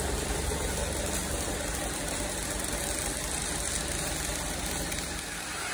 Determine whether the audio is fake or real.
real